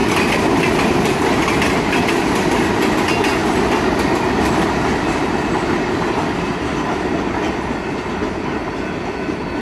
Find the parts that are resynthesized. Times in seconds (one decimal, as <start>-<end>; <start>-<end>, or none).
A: none